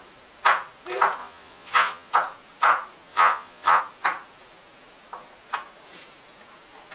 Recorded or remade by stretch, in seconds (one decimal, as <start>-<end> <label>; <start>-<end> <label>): 0.0-1.2 recorded; 1.2-2.1 remade; 2.1-3.1 recorded; 3.1-3.8 remade; 3.8-6.9 recorded